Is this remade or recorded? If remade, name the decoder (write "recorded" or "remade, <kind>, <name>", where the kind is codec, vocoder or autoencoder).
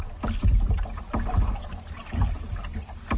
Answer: recorded